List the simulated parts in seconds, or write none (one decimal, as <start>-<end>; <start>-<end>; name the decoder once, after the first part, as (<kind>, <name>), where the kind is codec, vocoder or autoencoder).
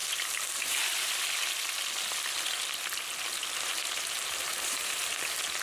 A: 0.0-0.8 (vocoder, BigVGAN v2); 3.7-5.1